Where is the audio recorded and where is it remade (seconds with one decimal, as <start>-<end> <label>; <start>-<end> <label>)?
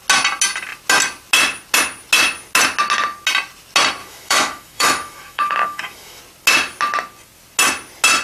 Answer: 0.0-4.0 recorded; 4.0-6.2 remade; 6.2-8.2 recorded